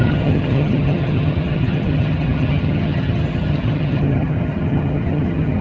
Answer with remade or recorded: remade